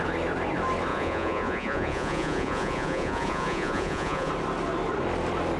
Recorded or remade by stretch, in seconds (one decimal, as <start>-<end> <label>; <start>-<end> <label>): 0.0-0.9 recorded; 0.9-4.3 remade; 4.3-5.6 recorded